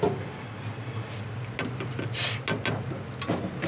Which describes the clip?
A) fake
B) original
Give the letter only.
B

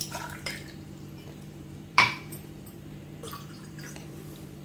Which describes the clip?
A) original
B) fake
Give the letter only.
B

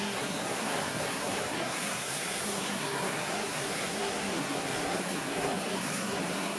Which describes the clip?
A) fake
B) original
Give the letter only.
A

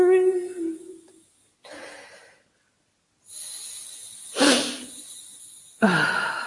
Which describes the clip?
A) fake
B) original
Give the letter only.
B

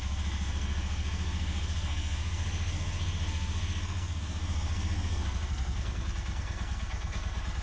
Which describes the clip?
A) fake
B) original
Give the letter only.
A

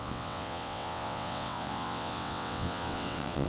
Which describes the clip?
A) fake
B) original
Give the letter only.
A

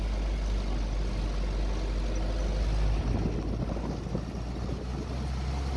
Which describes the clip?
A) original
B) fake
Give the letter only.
A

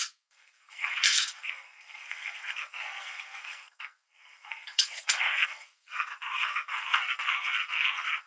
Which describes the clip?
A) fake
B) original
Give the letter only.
A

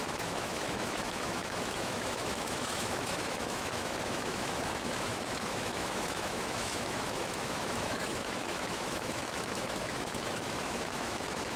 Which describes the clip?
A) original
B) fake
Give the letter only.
B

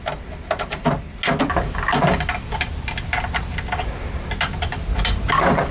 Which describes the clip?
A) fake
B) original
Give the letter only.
B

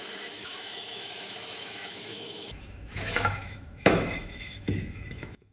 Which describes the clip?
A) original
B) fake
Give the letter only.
B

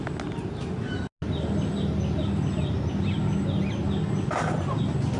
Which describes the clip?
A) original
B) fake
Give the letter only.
A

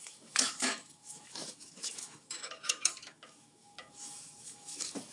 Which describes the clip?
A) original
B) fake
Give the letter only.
B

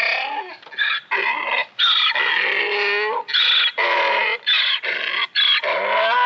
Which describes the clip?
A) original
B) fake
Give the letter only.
A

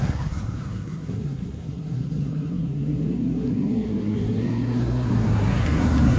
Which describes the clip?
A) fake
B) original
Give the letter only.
A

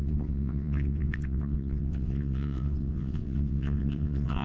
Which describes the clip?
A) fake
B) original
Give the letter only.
A